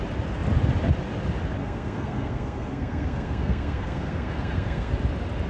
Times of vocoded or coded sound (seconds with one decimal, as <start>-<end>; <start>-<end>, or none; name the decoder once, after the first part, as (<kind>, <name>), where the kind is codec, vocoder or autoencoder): 1.6-4.9 (codec, SNAC)